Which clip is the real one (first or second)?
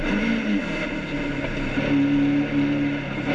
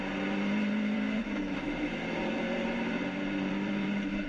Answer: first